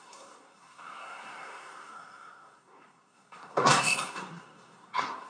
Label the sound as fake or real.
fake